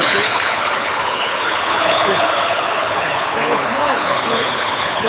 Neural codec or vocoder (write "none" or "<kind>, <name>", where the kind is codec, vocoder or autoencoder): codec, HILCodec